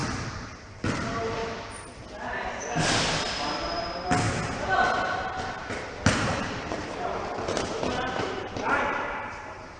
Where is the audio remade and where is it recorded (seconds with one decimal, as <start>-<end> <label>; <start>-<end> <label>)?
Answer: 0.0-0.9 recorded; 0.9-1.4 remade; 1.4-6.1 recorded; 6.1-9.8 remade

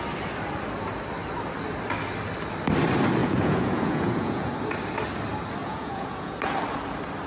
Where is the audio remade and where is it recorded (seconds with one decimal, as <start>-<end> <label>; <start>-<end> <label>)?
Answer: 0.0-3.2 recorded; 3.2-4.5 remade; 4.5-5.6 recorded; 5.6-6.3 remade; 6.3-7.3 recorded

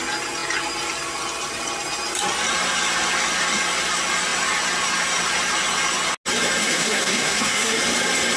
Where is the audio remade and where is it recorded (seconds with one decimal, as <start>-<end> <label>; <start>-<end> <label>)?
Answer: 0.0-6.6 recorded; 6.6-7.8 remade; 7.8-8.4 recorded

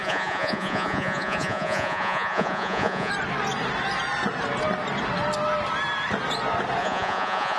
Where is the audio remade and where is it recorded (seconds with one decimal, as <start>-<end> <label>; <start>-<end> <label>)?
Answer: 0.0-3.1 remade; 3.1-6.8 recorded; 6.8-7.6 remade

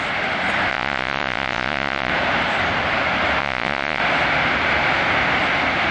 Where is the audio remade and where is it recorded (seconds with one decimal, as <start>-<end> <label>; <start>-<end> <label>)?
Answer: 0.0-0.7 recorded; 0.7-2.1 remade; 2.1-3.4 recorded; 3.4-4.0 remade; 4.0-5.9 recorded

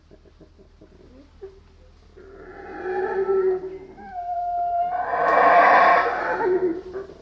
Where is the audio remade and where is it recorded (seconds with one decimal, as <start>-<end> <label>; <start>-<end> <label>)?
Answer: 0.0-7.2 recorded

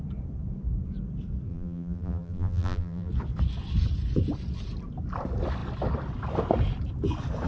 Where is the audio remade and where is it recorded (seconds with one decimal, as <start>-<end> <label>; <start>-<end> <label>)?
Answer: 0.0-1.5 recorded; 1.5-3.1 remade; 3.1-7.5 recorded